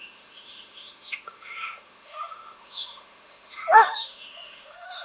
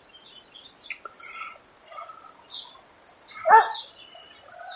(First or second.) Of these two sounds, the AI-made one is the first